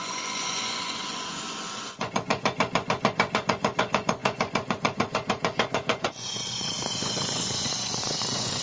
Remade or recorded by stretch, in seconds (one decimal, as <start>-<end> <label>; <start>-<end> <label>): 0.0-8.6 remade